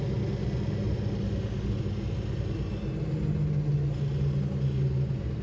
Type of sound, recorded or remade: recorded